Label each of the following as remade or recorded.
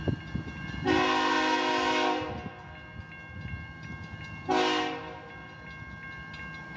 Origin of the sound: recorded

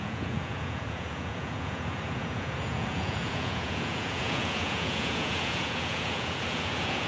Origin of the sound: remade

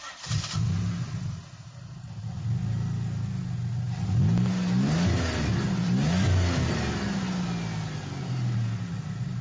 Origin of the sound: recorded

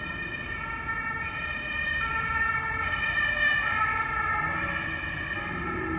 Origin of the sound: recorded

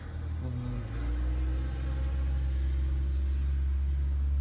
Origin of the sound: recorded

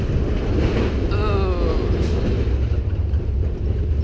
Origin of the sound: recorded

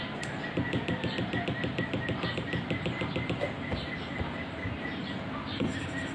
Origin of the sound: recorded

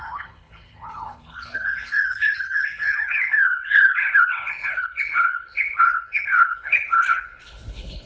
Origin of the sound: remade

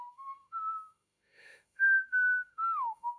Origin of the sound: remade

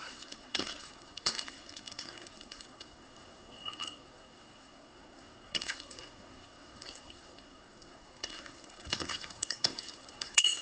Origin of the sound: remade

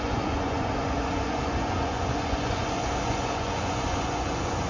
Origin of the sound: remade